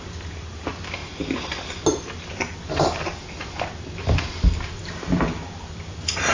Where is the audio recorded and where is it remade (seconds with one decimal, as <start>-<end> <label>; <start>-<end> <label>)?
0.0-6.3 recorded